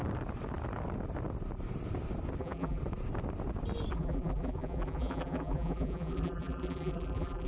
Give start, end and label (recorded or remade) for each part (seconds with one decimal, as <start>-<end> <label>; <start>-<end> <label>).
0.0-2.4 recorded; 2.4-2.8 remade; 2.8-3.9 recorded; 3.9-7.5 remade